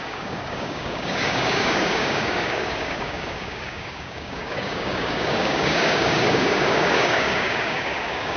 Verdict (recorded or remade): remade